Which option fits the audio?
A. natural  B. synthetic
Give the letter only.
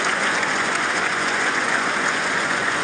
B